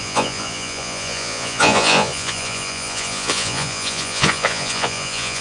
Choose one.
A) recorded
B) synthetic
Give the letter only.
B